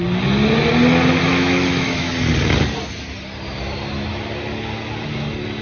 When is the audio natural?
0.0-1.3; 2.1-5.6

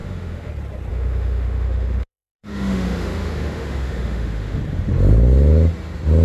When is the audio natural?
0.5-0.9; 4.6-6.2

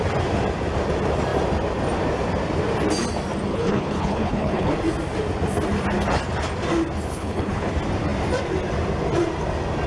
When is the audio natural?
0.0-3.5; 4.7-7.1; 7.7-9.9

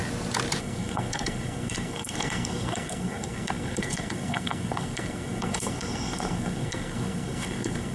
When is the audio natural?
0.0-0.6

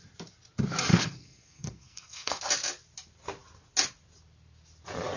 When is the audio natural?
0.0-0.9; 2.4-5.2

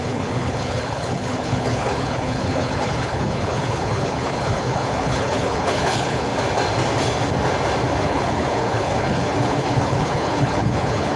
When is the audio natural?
6.3-8.0

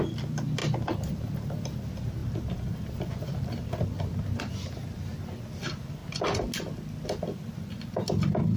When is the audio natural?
0.6-1.6; 6.0-7.2

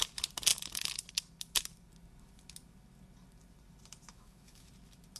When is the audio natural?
0.0-4.1; 4.7-5.2